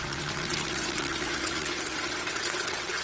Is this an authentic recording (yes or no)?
no